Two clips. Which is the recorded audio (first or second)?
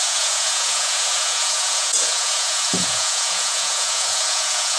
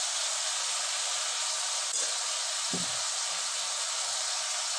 second